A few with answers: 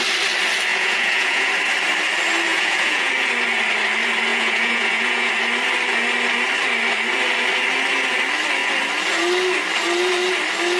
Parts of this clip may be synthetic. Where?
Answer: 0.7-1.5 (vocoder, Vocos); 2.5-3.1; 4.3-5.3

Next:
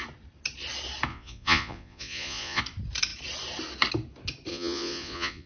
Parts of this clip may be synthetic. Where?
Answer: 1.1-2.6 (vocoder, Vocos); 4.5-5.5

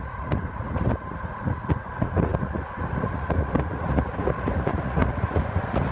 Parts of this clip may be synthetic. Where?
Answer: 0.0-5.9 (vocoder, Vocos)

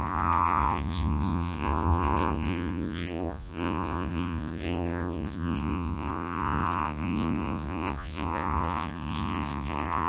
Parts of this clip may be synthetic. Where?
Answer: 0.0-10.1 (vocoder, Vocos)

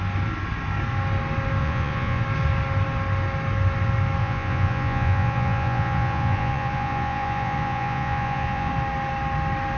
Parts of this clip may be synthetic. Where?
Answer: 1.6-2.2 (vocoder, Vocos); 4.2-8.7

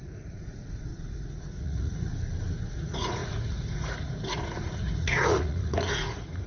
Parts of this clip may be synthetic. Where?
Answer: 0.0-2.1 (vocoder, Vocos); 2.7-6.5

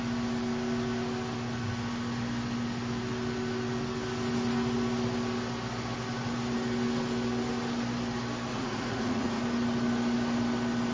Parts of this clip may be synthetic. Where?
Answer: 8.5-9.4 (vocoder, Vocos)

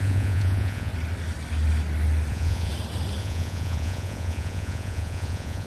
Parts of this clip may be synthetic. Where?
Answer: 0.0-0.9 (vocoder, Vocos); 2.3-2.7; 3.2-5.7